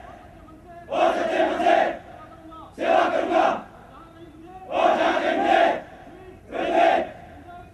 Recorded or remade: recorded